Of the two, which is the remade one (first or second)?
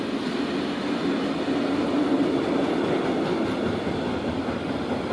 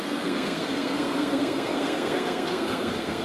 second